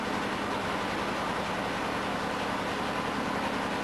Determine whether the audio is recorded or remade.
recorded